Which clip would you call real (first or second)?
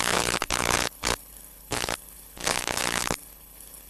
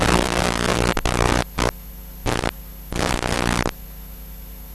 second